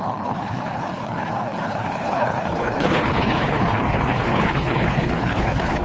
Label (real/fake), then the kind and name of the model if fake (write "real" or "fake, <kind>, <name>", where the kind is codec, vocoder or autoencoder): fake, codec, HILCodec